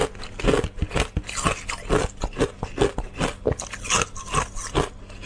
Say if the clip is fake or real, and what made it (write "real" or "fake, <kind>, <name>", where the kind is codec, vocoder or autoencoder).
real